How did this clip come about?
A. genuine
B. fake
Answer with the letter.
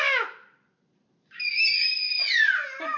A